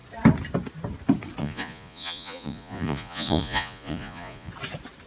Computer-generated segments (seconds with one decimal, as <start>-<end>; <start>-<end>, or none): 1.4-4.5